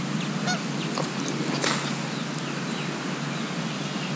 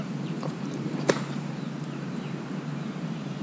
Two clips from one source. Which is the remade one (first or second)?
second